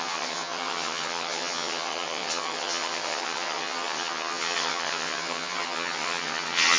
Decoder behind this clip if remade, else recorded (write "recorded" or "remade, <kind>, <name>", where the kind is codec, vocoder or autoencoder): remade, vocoder, HiFi-GAN